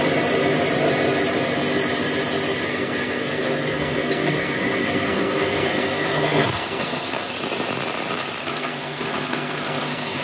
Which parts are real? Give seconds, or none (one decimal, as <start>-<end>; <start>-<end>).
0.0-2.7; 7.3-8.4

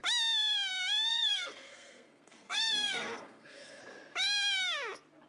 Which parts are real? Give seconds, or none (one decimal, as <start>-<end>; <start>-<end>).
0.0-1.1; 3.8-5.3

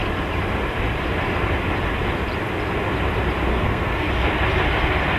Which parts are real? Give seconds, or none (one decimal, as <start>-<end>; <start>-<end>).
0.0-3.5; 4.1-5.2

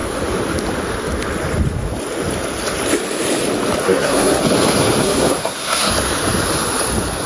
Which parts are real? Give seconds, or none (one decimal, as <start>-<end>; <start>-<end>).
0.0-3.8; 4.4-5.0; 5.9-7.3